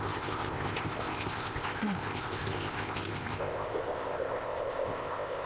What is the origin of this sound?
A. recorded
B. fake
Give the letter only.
B